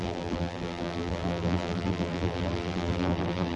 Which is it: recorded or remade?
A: remade